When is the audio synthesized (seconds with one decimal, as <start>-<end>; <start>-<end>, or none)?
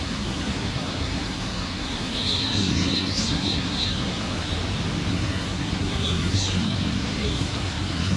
0.0-4.5; 5.1-8.2